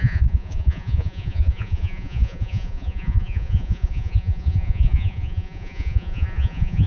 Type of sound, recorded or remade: remade